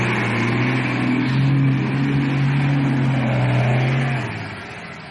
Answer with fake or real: real